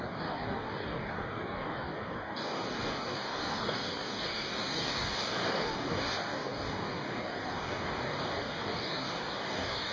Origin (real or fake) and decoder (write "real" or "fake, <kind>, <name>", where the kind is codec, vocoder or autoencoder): fake, codec, DAC